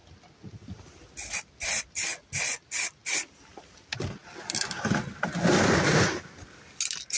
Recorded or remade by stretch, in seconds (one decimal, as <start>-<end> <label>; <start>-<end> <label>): 0.0-7.2 recorded